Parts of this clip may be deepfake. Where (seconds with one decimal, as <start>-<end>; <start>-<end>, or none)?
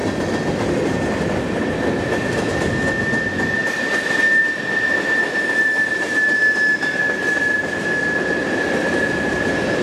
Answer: none